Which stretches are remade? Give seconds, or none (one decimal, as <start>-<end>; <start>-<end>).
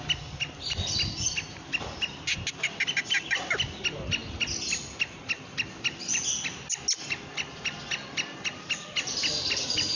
none